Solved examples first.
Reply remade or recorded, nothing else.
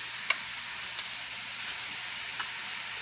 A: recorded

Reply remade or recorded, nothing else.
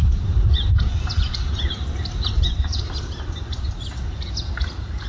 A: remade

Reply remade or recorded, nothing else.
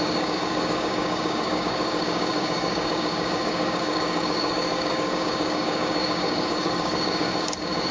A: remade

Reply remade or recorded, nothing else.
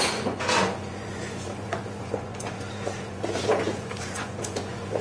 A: remade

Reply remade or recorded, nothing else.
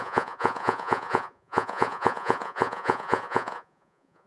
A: remade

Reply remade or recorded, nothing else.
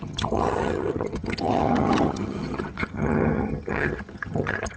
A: remade